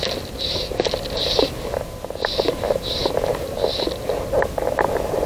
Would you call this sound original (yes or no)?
yes